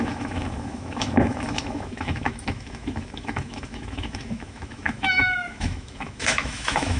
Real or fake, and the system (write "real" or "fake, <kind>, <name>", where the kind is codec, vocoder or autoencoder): fake, autoencoder, DAC-VAE